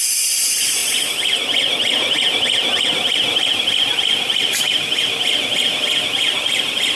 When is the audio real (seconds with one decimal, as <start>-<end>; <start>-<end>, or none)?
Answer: 0.0-7.0